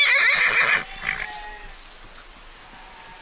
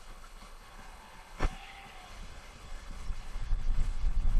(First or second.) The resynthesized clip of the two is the second